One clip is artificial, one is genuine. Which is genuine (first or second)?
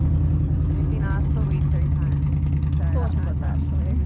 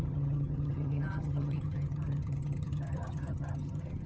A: first